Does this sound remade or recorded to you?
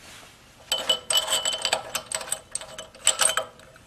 recorded